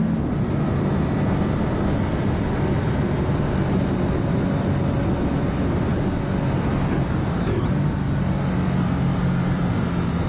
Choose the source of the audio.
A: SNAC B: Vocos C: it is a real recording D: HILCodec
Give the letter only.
C